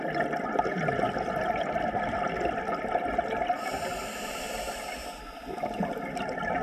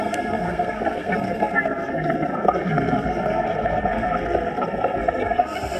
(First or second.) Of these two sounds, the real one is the first